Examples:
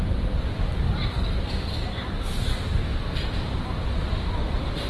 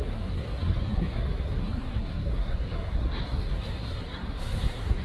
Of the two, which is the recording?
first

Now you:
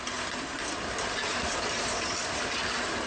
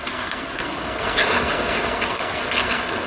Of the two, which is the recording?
first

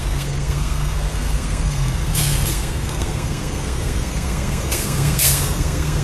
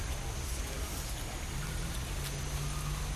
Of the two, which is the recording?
second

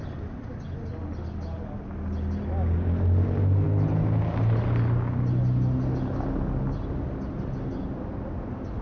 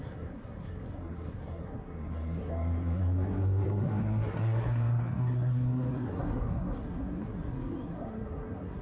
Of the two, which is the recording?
first